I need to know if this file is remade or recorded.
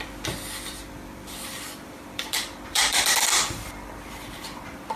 remade